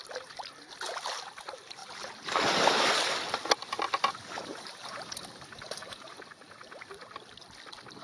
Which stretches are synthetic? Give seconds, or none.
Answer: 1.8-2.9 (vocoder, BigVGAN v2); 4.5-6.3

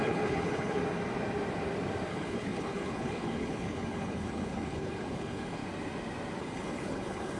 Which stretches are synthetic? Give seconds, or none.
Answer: 0.0-0.8 (codec, HILCodec); 2.1-5.6; 6.4-7.4